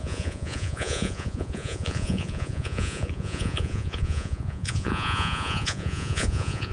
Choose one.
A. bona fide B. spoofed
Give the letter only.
B